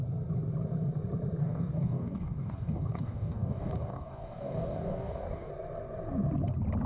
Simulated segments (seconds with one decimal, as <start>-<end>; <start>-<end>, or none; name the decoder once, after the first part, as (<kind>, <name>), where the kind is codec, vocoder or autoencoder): 1.4-5.5 (codec, DAC)